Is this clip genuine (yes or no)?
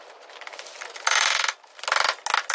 yes